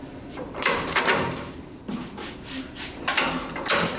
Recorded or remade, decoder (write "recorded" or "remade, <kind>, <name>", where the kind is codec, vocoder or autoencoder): remade, vocoder, BigVGAN v2